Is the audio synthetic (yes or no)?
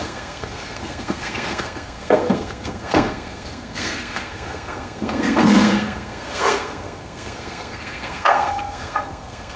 yes